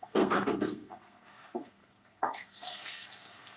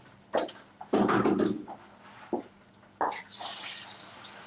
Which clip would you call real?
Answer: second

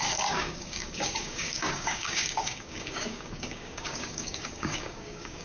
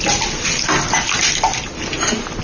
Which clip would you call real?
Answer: second